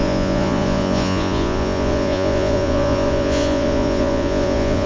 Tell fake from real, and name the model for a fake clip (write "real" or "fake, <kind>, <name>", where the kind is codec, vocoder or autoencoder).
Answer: fake, vocoder, Vocos